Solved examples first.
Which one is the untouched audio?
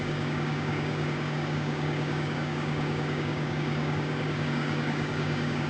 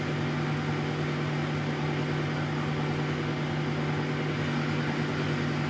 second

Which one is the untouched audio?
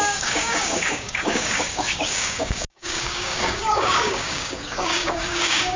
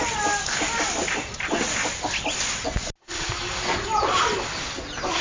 second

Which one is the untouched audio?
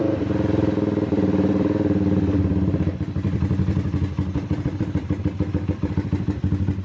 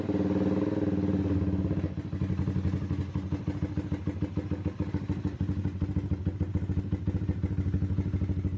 second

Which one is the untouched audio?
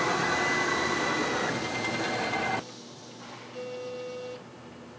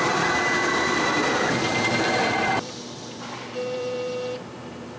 first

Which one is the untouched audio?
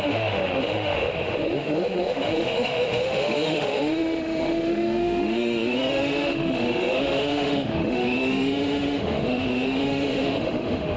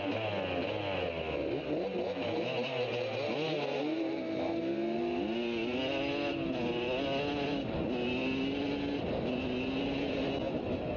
second